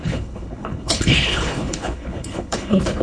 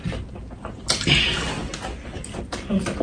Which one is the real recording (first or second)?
second